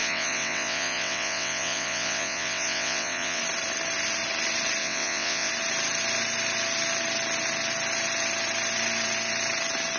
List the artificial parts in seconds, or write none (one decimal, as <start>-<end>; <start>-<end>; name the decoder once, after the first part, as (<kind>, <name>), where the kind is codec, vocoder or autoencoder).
0.0-3.4 (vocoder, WaveNeXt); 4.8-5.5